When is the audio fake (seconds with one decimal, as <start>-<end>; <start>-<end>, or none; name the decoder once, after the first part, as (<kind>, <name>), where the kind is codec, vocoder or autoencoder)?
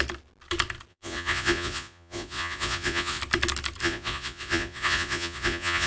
0.9-3.2 (vocoder, Vocos); 3.8-5.9